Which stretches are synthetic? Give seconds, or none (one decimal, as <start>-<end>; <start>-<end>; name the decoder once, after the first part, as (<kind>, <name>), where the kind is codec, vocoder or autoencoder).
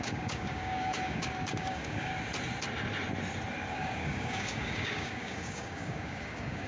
0.0-2.1 (codec, DAC); 3.7-6.7